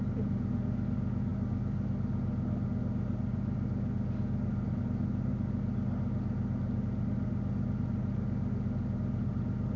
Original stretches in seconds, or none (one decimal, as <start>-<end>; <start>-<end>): 0.0-9.8